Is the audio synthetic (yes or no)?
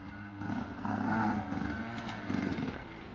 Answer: yes